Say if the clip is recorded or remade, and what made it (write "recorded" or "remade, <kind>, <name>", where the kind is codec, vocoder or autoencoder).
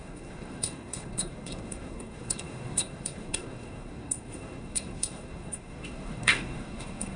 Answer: remade, codec, SNAC